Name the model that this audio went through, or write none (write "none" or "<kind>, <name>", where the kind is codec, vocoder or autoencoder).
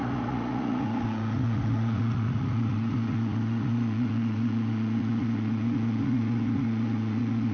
vocoder, Vocos